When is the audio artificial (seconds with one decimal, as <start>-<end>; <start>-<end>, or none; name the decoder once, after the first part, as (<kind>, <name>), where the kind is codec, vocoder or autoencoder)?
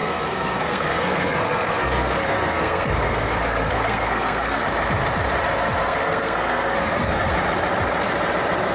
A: 0.0-4.6 (codec, SNAC); 5.8-7.3